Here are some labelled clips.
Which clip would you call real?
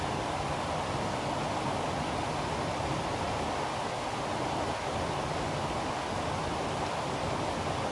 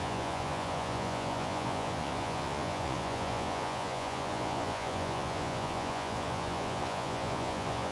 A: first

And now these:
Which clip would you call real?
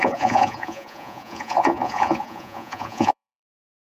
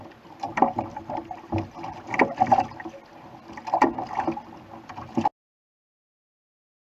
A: second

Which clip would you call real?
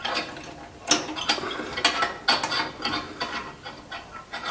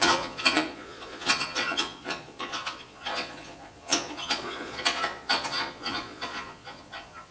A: first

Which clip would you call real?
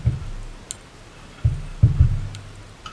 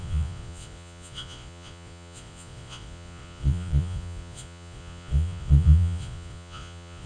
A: first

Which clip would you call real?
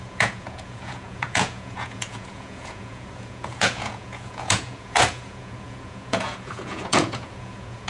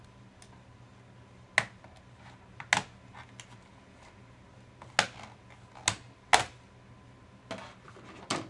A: second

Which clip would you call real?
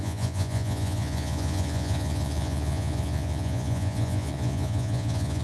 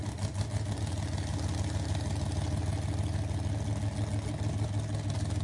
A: second